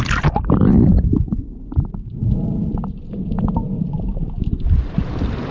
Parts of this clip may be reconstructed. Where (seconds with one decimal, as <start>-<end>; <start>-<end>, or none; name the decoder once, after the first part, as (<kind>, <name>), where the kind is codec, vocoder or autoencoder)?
none